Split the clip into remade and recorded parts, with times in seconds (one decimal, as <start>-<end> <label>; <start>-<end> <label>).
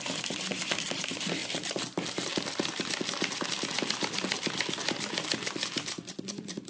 0.0-6.7 remade